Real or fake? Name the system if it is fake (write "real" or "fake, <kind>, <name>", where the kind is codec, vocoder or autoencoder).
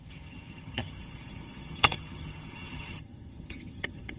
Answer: fake, vocoder, HiFi-GAN